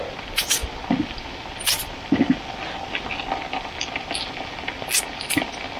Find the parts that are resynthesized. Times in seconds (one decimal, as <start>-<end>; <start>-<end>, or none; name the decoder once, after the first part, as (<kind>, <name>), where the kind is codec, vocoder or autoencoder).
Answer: none